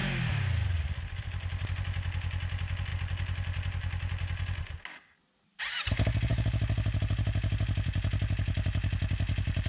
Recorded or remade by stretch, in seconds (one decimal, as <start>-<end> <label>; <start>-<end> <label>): 0.0-9.7 recorded